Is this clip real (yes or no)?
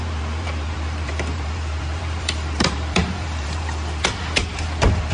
no